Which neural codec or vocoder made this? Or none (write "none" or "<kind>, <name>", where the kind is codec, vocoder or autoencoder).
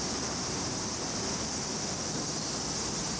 none